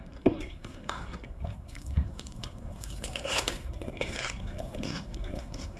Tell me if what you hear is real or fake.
fake